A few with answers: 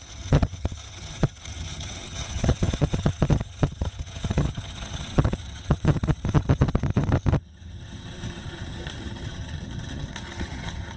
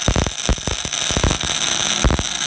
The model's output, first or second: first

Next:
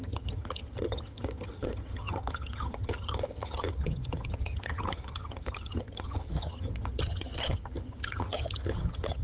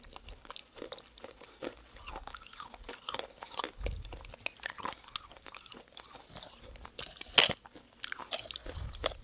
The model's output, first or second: first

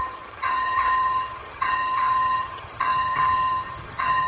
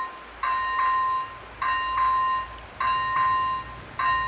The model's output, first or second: first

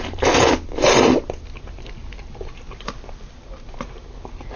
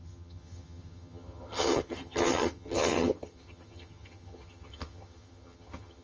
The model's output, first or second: second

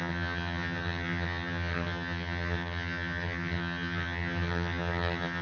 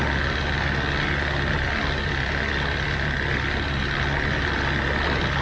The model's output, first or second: first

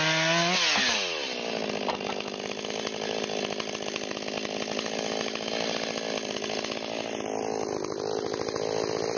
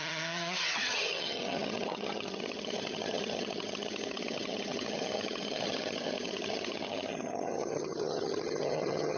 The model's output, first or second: second